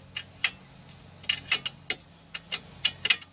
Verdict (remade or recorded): recorded